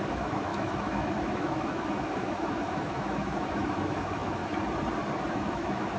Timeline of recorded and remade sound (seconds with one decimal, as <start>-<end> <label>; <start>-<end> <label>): 0.0-4.4 remade; 4.4-5.3 recorded; 5.3-6.0 remade